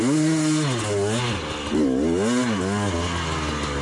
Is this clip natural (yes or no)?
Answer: yes